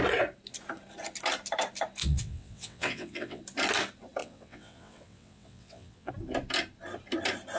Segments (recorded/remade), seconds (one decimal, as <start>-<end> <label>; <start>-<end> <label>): 0.0-2.0 recorded; 2.0-3.4 remade; 3.4-4.2 recorded; 4.2-6.1 remade; 6.1-7.6 recorded